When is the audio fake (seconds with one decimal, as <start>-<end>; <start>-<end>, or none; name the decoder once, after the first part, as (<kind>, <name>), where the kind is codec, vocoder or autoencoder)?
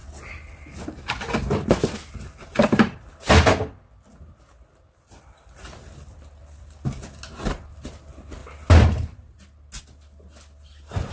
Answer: none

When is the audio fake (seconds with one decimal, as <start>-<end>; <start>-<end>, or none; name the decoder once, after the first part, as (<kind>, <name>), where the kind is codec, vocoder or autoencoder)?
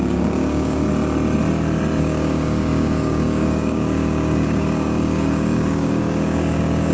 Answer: 0.0-0.8 (codec, DAC); 2.0-6.9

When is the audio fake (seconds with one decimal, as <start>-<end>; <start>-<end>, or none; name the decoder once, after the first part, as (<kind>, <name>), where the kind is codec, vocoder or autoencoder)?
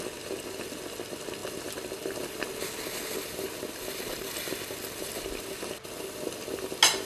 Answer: none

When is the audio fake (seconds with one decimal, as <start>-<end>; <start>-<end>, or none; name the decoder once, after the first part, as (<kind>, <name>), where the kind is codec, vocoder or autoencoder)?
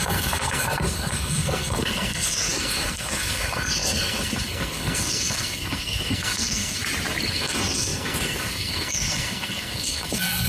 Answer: 0.0-6.8 (codec, SNAC); 7.3-10.5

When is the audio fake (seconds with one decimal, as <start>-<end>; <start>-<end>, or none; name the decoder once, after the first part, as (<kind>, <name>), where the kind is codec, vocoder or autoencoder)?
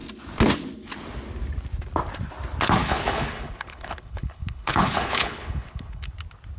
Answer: 2.8-6.1 (codec, HILCodec)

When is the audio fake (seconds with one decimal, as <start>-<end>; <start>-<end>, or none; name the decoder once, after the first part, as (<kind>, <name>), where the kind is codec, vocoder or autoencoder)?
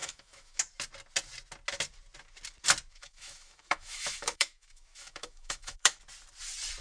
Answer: 0.0-0.6 (autoencoder, DAC-VAE); 2.9-6.0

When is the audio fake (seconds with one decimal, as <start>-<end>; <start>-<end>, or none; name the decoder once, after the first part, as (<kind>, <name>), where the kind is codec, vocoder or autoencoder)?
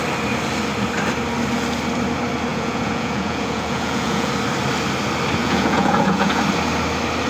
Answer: 2.5-4.3 (vocoder, Vocos); 5.4-6.4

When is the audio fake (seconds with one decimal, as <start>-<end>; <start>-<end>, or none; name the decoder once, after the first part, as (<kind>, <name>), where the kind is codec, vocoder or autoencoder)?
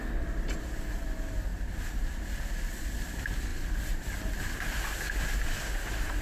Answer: none